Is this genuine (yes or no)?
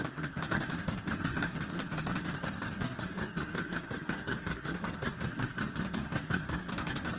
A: no